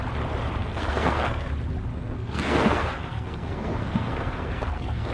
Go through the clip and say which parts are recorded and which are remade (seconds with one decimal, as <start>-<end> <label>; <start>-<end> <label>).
0.0-0.6 recorded; 0.6-1.5 remade; 1.5-1.9 recorded; 1.9-5.1 remade

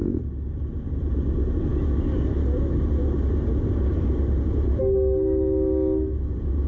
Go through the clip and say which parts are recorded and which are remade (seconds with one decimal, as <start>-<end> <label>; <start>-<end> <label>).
0.0-6.7 recorded